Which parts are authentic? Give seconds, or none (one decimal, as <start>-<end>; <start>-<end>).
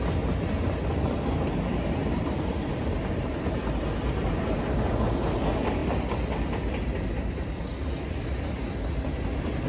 0.0-2.0; 4.6-9.7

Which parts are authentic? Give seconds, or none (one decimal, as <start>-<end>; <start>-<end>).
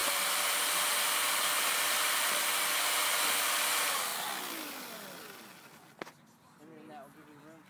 2.0-7.7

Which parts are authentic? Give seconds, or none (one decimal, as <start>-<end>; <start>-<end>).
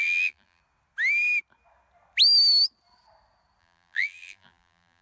0.6-3.6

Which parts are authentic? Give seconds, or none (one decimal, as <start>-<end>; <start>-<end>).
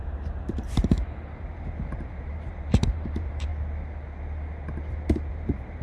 3.5-5.3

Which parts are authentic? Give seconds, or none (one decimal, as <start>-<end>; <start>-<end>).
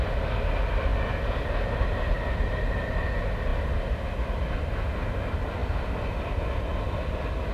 0.0-7.5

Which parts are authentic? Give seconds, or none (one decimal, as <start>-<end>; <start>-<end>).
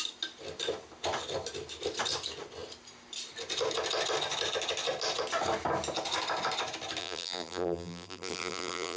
0.0-7.0